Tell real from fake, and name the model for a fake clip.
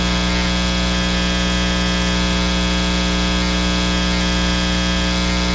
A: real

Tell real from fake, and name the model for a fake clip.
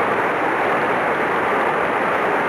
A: real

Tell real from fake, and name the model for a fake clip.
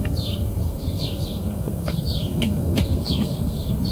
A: fake, codec, SNAC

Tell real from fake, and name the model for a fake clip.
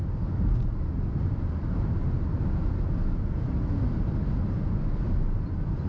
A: real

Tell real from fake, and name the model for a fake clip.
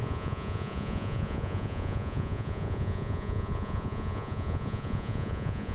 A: fake, vocoder, Vocos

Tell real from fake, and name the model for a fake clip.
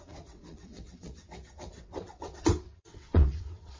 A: fake, vocoder, WaveNeXt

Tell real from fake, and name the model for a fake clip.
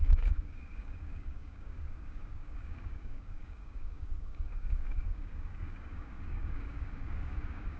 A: fake, codec, DAC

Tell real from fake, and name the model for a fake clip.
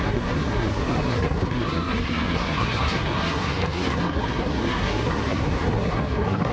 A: fake, codec, SNAC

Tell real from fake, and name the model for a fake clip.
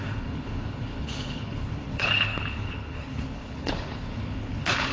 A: fake, codec, HILCodec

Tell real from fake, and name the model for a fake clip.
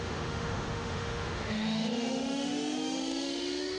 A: fake, autoencoder, DAC-VAE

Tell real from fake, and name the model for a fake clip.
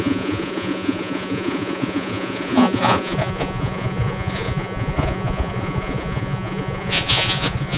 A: fake, vocoder, Vocos